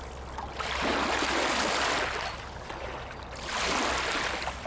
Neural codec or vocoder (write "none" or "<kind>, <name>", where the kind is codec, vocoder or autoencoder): none